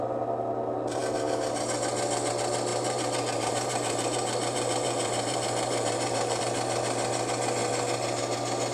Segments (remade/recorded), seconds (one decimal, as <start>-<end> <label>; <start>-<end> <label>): 0.0-2.7 recorded; 2.7-6.4 remade; 6.4-8.7 recorded